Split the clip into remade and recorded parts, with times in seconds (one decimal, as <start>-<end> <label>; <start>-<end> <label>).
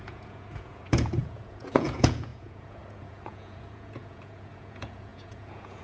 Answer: 0.0-5.8 remade